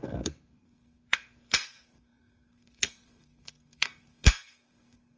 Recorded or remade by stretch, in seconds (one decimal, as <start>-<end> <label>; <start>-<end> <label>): 0.0-5.2 remade